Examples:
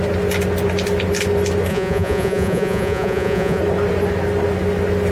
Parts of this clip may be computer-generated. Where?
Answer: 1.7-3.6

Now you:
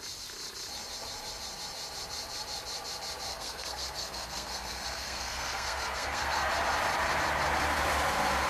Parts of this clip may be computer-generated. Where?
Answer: 3.3-6.5